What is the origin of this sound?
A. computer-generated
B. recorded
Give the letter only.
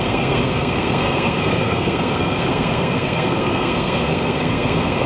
A